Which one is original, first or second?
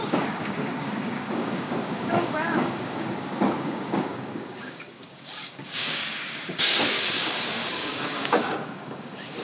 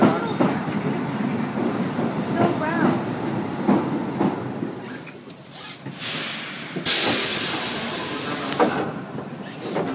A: second